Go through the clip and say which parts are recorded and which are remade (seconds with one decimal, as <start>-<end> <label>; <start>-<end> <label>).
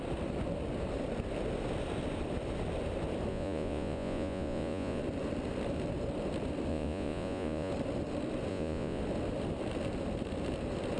0.0-3.3 recorded; 3.3-5.0 remade; 5.0-6.7 recorded; 6.7-7.7 remade; 7.7-8.5 recorded; 8.5-9.0 remade; 9.0-11.0 recorded